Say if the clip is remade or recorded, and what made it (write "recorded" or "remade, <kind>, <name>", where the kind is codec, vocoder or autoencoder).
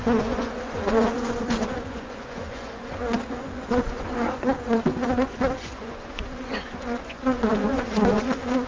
remade, vocoder, Vocos